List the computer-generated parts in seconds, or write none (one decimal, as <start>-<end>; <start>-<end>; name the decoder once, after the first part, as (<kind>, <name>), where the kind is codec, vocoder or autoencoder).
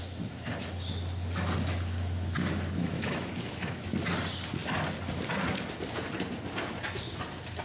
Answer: 2.8-3.9 (autoencoder, DAC-VAE)